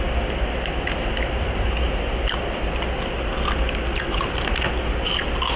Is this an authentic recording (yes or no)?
yes